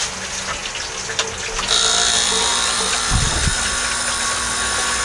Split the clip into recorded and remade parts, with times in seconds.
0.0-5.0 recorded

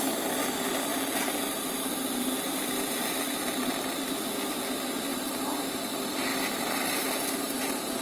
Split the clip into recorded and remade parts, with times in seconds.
0.0-0.9 recorded; 0.9-3.7 remade; 3.7-5.1 recorded; 5.1-5.6 remade; 5.6-6.3 recorded; 6.3-7.6 remade; 7.6-8.0 recorded